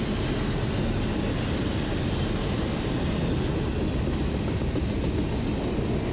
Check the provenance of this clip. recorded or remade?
recorded